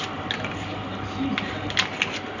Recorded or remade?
recorded